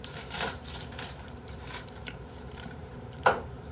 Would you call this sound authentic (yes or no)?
no